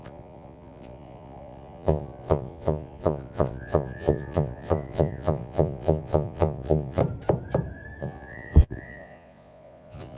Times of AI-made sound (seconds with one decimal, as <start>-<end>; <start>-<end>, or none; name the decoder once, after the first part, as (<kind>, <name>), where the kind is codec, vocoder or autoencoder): 0.0-7.0 (vocoder, Vocos); 8.0-10.2